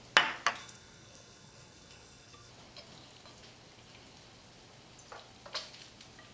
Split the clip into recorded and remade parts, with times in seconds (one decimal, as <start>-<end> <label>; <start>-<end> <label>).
0.0-0.6 recorded; 0.6-2.5 remade; 2.5-6.3 recorded